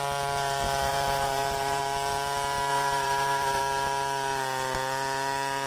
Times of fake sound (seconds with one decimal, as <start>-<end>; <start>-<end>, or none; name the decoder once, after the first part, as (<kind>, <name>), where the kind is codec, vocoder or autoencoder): 0.9-1.8 (vocoder, BigVGAN v2); 2.7-3.6